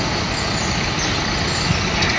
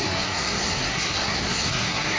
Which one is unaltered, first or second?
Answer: first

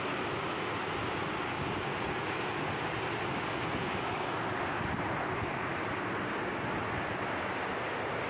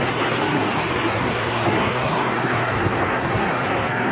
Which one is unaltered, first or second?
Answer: first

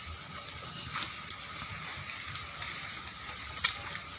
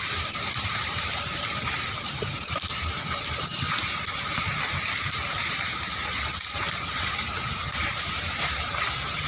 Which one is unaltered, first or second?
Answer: first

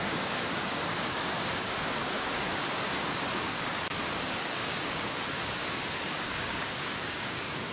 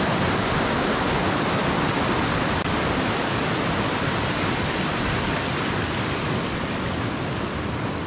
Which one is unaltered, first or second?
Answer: second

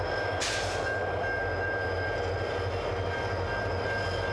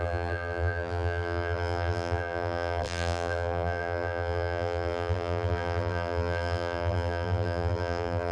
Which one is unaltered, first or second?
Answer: first